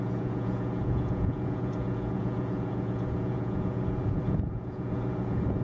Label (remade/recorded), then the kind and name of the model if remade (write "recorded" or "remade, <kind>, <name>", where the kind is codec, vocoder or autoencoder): remade, vocoder, Vocos